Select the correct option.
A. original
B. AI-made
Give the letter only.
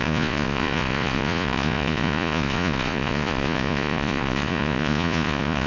B